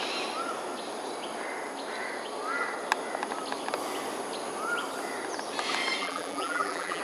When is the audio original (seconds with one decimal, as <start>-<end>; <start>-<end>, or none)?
0.0-6.0